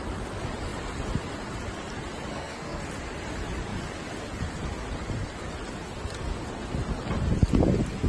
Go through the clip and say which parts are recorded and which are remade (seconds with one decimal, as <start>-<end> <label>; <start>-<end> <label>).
0.0-2.3 recorded; 2.3-2.8 remade; 2.8-8.1 recorded